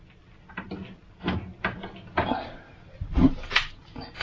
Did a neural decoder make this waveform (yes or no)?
no